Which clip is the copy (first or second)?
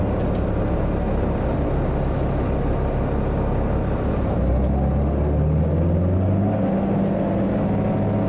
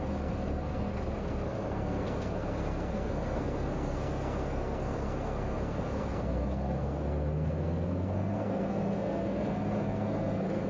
second